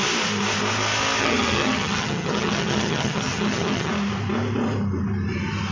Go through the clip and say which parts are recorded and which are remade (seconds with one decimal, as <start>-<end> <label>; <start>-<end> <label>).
0.0-1.2 recorded; 1.2-3.9 remade; 3.9-5.7 recorded